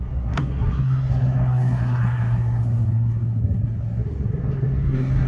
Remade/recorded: remade